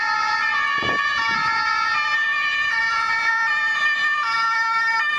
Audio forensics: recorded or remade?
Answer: recorded